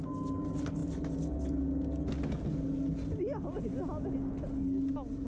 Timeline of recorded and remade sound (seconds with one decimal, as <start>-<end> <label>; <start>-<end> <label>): 0.0-5.3 recorded